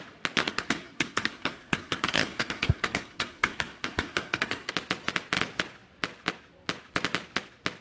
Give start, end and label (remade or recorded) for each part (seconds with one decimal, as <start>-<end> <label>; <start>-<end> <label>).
0.0-0.4 recorded; 0.4-4.7 remade; 4.7-7.8 recorded